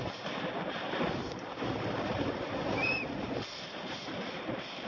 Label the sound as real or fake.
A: fake